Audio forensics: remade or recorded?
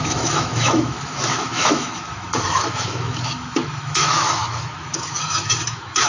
remade